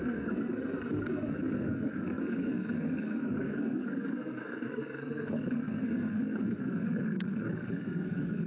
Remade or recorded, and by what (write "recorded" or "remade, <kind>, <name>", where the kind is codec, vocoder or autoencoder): remade, codec, SNAC